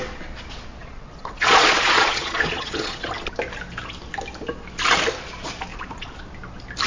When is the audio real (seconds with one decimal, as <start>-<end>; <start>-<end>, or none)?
0.0-0.8; 3.1-5.7; 6.3-6.9